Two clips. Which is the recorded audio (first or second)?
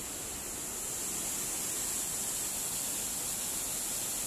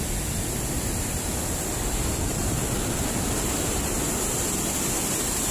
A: first